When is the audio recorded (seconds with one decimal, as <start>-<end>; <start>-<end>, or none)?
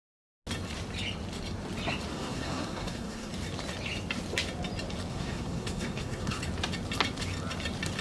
0.0-2.1; 3.3-5.1; 6.4-8.0